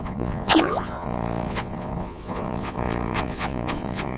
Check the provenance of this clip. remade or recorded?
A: remade